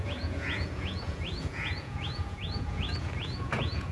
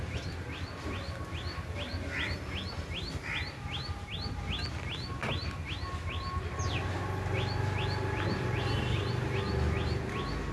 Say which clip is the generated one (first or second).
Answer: first